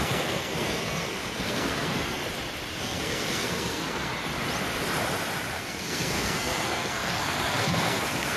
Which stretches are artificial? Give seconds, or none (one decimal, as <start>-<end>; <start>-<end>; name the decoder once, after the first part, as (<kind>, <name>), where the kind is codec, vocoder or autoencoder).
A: 0.0-2.2 (codec, SNAC); 2.8-4.1; 5.5-8.4